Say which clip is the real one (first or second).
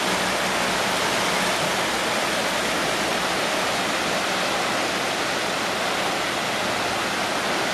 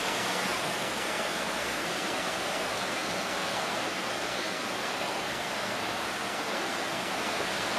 first